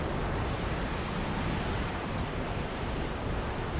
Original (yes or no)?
yes